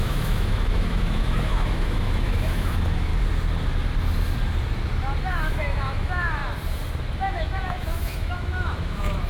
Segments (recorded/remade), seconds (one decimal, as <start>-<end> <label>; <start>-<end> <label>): 0.0-3.1 remade; 3.1-5.2 recorded; 5.2-6.4 remade; 6.4-7.2 recorded; 7.2-9.3 remade

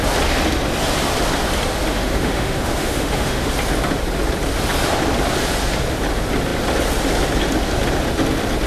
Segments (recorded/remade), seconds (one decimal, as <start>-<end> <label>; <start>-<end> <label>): 0.0-1.9 recorded; 1.9-3.5 remade; 3.5-8.7 recorded

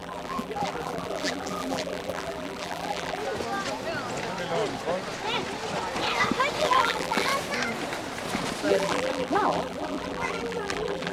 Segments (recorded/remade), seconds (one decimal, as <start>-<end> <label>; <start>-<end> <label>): 0.0-3.2 remade; 3.2-6.6 recorded; 6.6-7.3 remade; 7.3-8.7 recorded; 8.7-11.1 remade

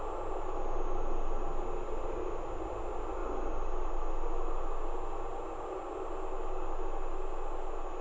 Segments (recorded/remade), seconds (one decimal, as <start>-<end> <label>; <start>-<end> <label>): 0.0-8.0 recorded

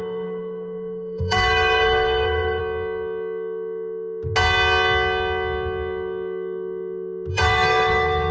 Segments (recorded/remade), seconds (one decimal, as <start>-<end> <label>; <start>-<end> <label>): 0.0-2.6 remade; 2.6-7.3 recorded; 7.3-8.3 remade

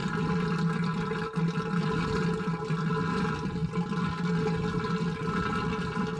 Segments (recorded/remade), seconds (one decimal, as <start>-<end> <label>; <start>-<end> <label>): 0.0-6.2 recorded